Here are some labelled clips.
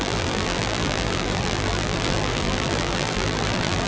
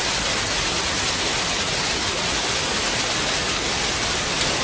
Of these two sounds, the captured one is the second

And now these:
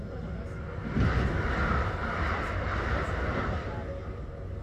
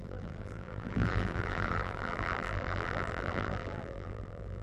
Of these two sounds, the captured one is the first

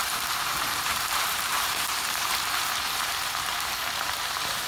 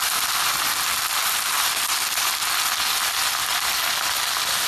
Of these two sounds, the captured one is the second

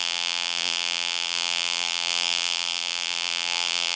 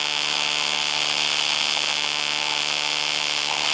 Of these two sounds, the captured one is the second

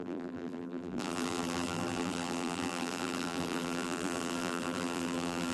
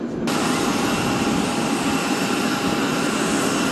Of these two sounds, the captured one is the second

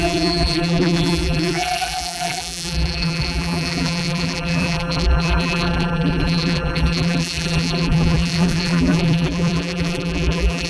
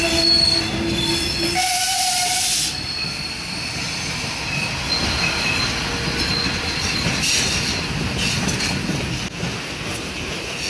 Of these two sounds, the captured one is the second